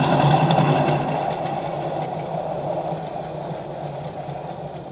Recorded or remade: recorded